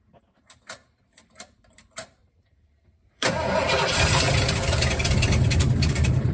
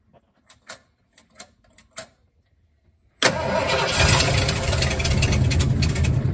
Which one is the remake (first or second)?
first